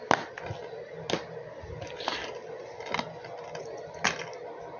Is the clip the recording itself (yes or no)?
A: yes